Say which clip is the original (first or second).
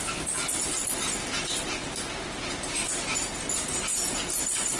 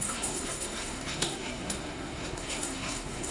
first